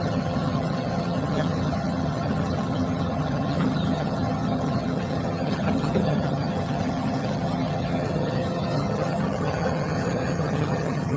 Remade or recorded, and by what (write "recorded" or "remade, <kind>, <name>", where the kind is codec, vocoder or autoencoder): remade, vocoder, HiFi-GAN